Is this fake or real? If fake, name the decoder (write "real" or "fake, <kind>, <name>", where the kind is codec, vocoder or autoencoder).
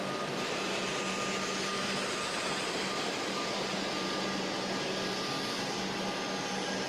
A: real